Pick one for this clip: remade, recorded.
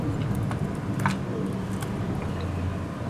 recorded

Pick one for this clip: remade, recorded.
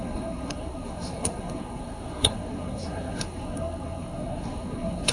remade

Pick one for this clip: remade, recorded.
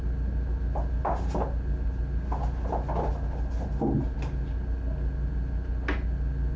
recorded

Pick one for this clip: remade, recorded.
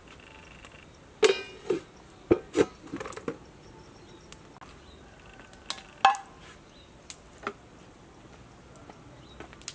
recorded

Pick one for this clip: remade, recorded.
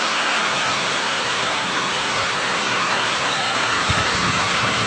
remade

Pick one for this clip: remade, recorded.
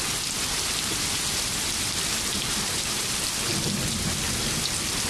recorded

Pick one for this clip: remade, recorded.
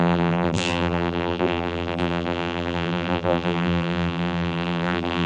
remade